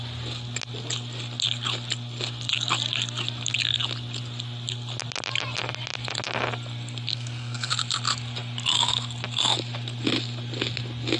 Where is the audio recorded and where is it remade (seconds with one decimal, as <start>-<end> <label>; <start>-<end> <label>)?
0.0-7.1 recorded; 7.1-7.7 remade; 7.7-11.2 recorded